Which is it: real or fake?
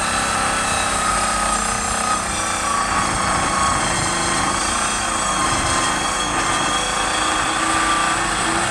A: real